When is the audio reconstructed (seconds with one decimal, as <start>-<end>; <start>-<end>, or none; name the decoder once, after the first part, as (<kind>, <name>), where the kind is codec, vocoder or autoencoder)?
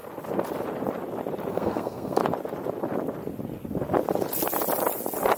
1.5-2.2 (codec, SNAC)